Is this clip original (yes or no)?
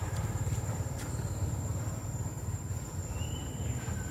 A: no